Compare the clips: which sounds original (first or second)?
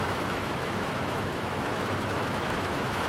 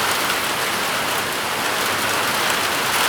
second